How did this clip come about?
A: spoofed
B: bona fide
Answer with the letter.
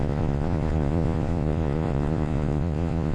A